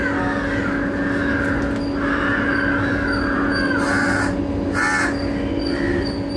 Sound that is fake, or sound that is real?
real